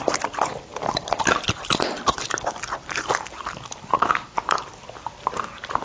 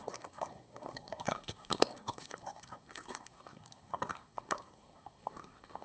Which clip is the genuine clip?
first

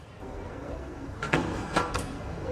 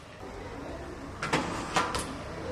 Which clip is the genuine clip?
second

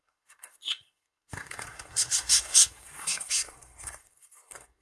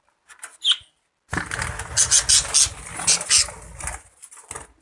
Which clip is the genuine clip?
second